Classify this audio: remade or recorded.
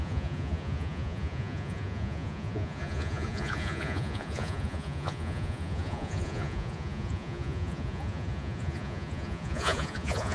remade